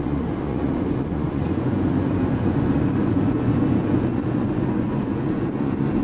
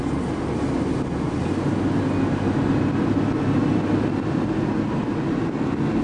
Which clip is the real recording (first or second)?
second